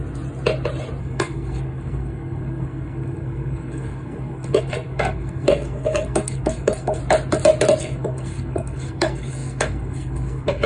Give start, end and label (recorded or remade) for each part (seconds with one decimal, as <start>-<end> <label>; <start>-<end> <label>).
0.0-1.0 recorded; 1.0-7.0 remade; 7.0-7.8 recorded; 7.8-10.7 remade